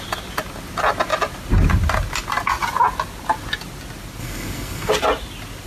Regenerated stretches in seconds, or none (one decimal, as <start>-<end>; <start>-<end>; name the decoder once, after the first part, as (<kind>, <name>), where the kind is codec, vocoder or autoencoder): 4.2-4.9 (codec, SNAC)